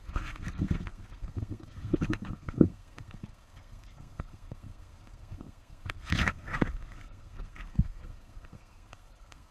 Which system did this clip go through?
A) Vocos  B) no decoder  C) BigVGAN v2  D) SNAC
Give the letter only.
D